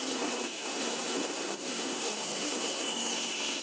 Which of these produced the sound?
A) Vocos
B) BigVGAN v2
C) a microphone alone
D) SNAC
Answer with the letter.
D